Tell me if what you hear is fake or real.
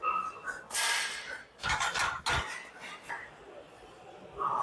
real